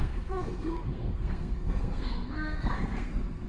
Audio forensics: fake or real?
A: fake